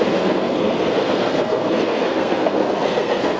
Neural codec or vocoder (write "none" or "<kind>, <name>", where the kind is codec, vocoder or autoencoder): codec, SNAC